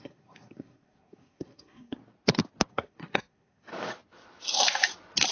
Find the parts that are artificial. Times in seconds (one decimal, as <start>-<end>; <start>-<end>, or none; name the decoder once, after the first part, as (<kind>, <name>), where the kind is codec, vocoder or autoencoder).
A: 0.0-2.0 (codec, SNAC); 2.7-3.7